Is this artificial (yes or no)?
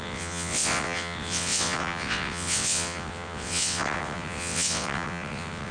yes